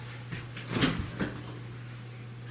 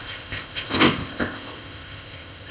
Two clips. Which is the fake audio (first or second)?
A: second